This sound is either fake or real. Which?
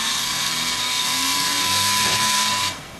fake